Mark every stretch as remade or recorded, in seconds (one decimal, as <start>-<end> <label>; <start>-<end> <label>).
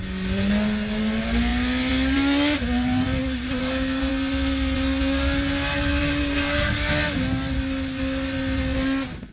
0.0-3.6 recorded; 3.6-4.1 remade; 4.1-6.2 recorded; 6.2-6.9 remade; 6.9-9.3 recorded